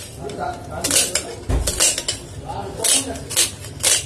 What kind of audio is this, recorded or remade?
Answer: recorded